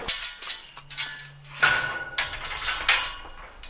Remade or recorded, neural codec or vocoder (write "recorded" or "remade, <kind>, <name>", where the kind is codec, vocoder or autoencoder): recorded